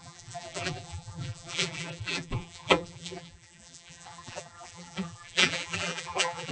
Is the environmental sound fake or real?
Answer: fake